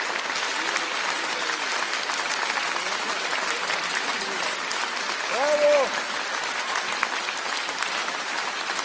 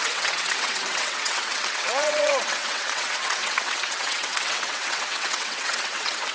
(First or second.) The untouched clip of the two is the first